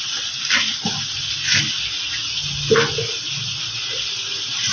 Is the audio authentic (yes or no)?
yes